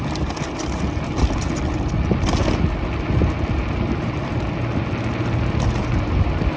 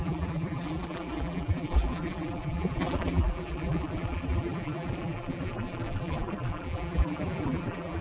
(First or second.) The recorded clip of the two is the first